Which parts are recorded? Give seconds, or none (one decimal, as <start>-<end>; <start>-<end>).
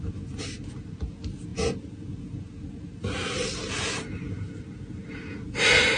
0.0-6.0